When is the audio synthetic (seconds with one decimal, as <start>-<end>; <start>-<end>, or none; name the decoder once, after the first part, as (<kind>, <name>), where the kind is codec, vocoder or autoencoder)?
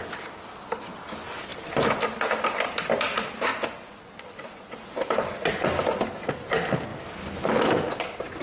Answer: 3.5-4.7 (vocoder, Vocos)